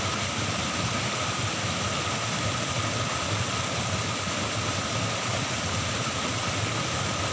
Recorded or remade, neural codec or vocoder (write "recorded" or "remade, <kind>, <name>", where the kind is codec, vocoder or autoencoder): recorded